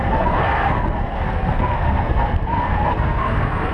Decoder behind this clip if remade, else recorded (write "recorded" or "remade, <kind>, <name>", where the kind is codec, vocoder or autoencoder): remade, codec, SNAC